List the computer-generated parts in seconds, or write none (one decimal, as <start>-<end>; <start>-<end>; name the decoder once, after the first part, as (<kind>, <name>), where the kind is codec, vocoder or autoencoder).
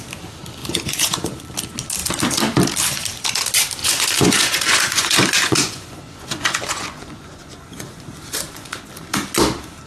0.6-1.4 (vocoder, Vocos); 3.8-8.9